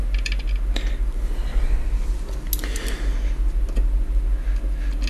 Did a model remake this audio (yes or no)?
no